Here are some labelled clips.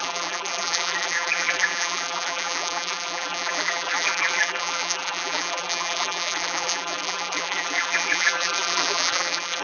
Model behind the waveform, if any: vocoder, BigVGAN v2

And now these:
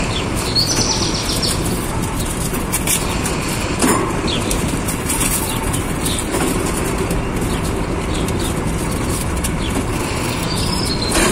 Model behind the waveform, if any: vocoder, BigVGAN v2